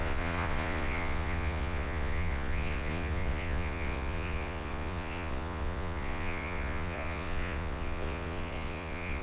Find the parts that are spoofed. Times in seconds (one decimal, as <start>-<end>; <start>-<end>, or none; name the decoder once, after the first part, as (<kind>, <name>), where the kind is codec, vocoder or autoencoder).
0.0-9.2 (vocoder, Vocos)